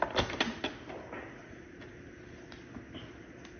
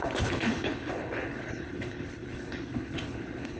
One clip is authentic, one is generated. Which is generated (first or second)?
second